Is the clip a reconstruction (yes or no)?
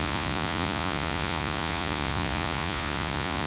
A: yes